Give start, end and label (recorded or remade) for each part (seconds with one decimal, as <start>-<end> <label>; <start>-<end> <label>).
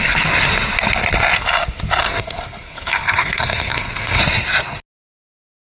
0.0-2.0 recorded; 2.0-4.2 remade; 4.2-5.8 recorded